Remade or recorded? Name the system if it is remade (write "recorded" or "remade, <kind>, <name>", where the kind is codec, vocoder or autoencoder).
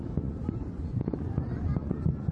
remade, vocoder, Vocos